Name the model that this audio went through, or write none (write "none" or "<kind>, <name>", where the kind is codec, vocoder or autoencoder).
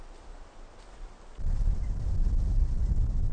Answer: none